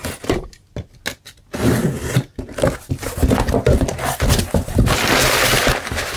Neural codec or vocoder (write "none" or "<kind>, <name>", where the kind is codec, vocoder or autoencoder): none